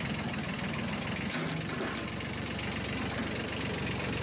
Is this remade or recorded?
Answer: recorded